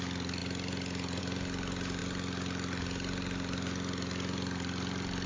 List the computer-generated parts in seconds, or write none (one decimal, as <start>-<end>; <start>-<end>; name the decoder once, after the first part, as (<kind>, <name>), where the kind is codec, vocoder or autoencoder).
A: none